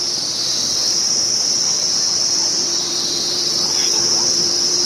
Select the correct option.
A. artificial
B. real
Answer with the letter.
A